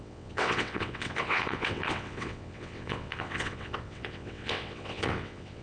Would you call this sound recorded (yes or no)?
no